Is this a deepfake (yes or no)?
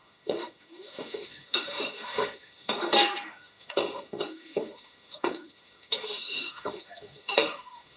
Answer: yes